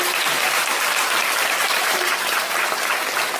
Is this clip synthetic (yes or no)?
no